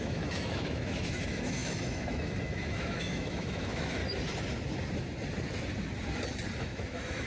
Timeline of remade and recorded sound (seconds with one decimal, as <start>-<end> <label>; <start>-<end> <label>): 0.0-4.0 remade; 4.0-6.6 recorded; 6.6-7.3 remade